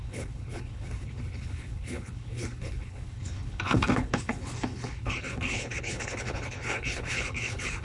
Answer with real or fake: fake